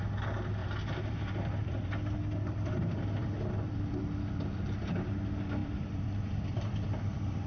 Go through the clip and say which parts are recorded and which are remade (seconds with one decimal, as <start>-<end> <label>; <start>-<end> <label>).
0.0-0.6 recorded; 0.6-4.9 remade; 4.9-5.6 recorded; 5.6-7.5 remade

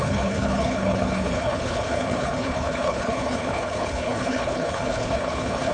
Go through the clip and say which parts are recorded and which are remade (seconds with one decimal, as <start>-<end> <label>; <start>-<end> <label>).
0.0-5.7 remade

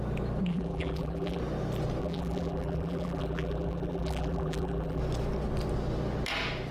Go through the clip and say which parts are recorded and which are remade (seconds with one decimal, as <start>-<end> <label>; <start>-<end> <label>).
0.0-0.5 recorded; 0.5-1.4 remade; 1.4-2.0 recorded; 2.0-5.0 remade; 5.0-6.7 recorded

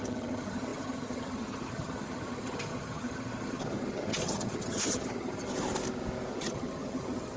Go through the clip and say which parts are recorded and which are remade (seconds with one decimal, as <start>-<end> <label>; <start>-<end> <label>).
0.0-5.5 remade; 5.5-6.3 recorded; 6.3-7.4 remade

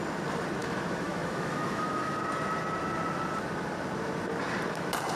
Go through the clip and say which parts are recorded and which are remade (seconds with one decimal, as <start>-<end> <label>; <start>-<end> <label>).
0.0-0.6 recorded; 0.6-2.2 remade; 2.2-5.2 recorded

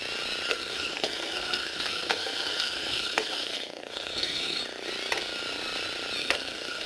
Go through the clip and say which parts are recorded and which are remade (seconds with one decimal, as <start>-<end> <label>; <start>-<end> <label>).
0.0-0.5 recorded; 0.5-4.6 remade; 4.6-6.2 recorded; 6.2-6.9 remade